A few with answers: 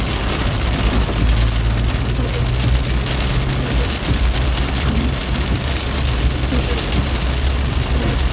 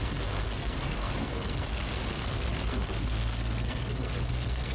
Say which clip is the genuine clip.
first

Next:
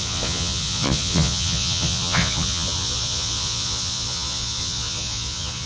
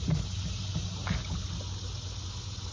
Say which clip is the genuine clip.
second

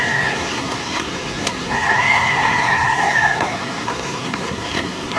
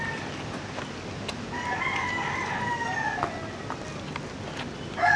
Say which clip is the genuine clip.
second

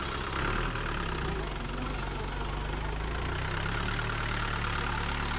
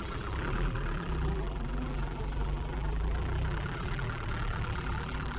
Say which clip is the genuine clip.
first